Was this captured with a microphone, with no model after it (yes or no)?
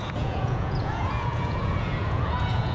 no